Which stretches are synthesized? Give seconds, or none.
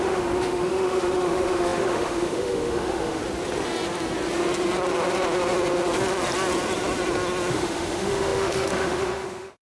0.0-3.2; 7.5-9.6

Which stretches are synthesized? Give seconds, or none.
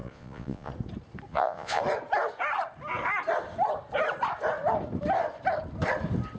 0.0-0.7; 1.3-1.8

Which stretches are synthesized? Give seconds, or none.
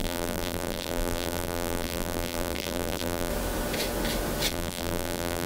0.0-3.3; 4.5-5.5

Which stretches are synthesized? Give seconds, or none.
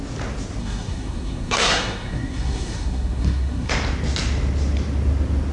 0.6-3.7